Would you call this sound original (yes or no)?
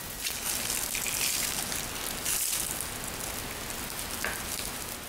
yes